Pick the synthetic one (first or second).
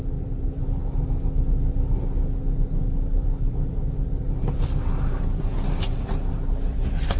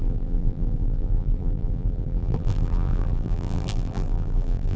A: second